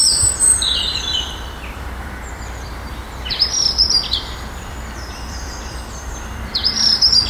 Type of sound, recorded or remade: remade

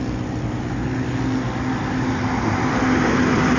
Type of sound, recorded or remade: recorded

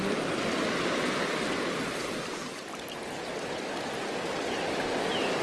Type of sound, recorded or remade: recorded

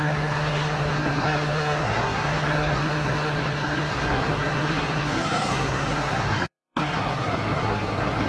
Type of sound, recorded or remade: remade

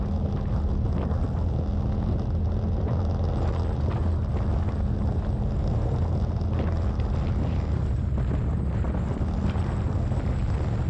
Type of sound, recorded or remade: recorded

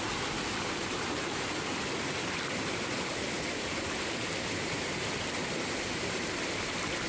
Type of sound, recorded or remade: recorded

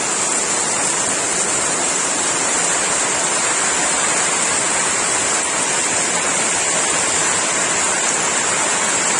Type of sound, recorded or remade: recorded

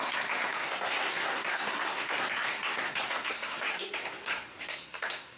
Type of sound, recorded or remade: remade